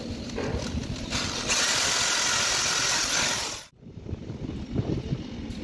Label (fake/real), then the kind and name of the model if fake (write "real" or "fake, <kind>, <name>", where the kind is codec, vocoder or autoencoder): real